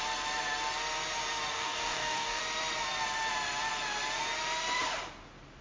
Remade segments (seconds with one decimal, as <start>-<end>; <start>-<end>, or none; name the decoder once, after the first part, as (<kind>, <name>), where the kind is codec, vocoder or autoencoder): 1.5-2.4 (codec, DAC)